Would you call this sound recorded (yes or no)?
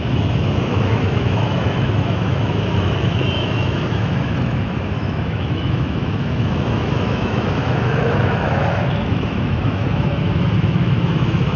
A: no